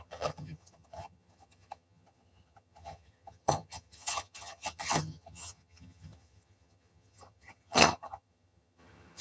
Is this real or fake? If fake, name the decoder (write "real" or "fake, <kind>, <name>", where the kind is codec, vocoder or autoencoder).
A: fake, vocoder, HiFi-GAN